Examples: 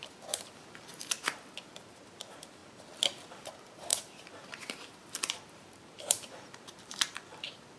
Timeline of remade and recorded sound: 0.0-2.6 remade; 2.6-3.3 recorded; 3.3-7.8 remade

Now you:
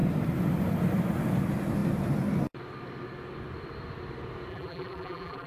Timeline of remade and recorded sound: 0.0-4.5 recorded; 4.5-5.5 remade

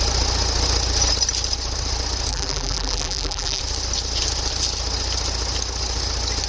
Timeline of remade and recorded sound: 0.0-2.3 recorded; 2.3-3.6 remade; 3.6-6.5 recorded

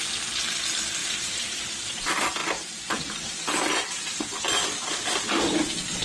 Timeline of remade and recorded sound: 0.0-1.0 recorded; 1.0-1.9 remade; 1.9-6.0 recorded

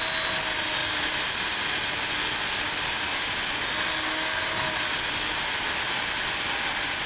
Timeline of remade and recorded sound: 0.0-0.8 recorded; 0.8-2.1 remade; 2.1-7.1 recorded

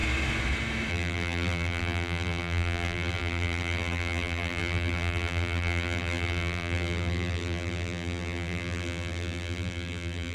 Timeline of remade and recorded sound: 0.0-0.9 recorded; 0.9-10.3 remade

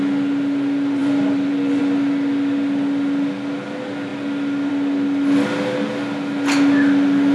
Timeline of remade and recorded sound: 0.0-1.0 recorded; 1.0-1.8 remade; 1.8-7.3 recorded

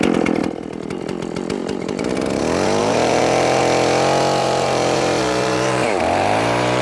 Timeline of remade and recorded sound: 0.0-0.4 recorded; 0.4-1.0 remade; 1.0-1.6 recorded; 1.6-2.4 remade; 2.4-2.8 recorded; 2.8-3.6 remade; 3.6-4.4 recorded; 4.4-6.8 remade